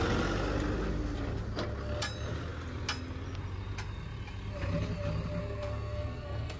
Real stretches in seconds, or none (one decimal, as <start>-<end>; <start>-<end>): 0.0-5.4